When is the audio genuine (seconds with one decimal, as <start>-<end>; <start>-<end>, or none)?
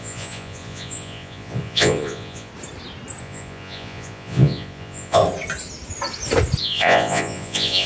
2.5-3.2; 5.2-6.6